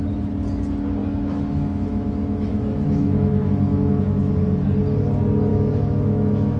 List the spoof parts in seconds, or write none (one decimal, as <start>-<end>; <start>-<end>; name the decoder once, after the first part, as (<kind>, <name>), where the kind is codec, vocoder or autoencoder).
1.0-4.0 (autoencoder, DAC-VAE); 5.5-6.6